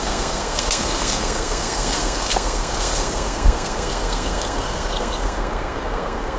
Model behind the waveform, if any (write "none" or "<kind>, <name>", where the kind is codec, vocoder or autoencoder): codec, SNAC